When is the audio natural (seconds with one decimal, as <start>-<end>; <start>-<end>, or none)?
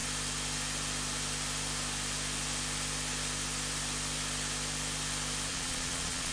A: 0.0-5.5